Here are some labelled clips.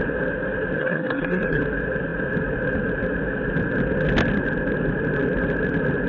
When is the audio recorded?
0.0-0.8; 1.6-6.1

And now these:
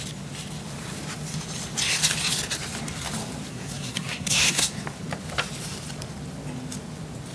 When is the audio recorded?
0.0-3.5; 4.7-7.3

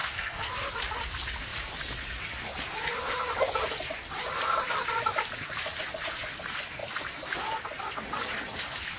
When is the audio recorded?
0.5-9.0

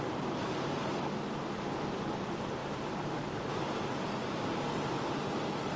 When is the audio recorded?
0.0-5.8

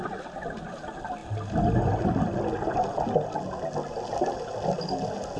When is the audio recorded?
0.0-5.4

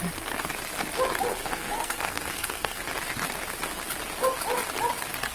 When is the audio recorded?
0.0-1.3; 2.8-5.3